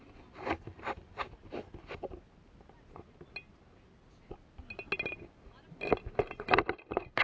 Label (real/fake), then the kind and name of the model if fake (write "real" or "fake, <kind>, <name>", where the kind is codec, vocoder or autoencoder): real